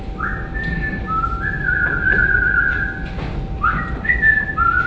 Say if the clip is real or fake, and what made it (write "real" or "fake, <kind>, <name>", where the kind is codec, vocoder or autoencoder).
real